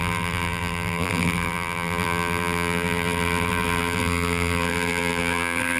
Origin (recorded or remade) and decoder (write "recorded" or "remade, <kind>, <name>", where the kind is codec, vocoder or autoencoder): remade, vocoder, BigVGAN v2